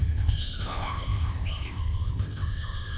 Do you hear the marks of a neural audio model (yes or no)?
yes